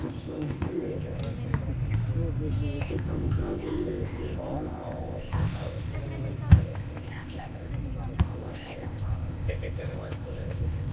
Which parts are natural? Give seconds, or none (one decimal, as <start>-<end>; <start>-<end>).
1.2-2.8; 5.9-6.5; 7.7-8.2